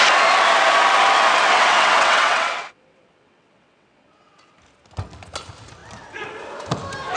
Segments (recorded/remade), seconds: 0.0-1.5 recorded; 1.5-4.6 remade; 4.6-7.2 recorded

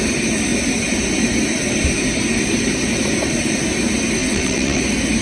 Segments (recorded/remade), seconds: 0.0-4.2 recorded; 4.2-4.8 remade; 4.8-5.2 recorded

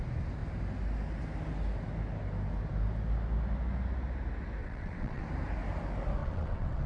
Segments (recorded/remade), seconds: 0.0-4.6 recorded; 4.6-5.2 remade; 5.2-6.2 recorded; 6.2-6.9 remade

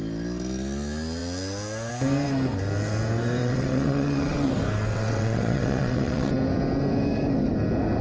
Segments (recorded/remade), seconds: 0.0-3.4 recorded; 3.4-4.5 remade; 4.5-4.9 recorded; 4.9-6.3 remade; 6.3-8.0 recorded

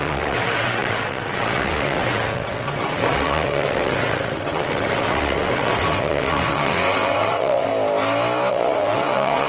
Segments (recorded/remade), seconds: 0.0-7.7 remade; 7.7-8.5 recorded; 8.5-9.5 remade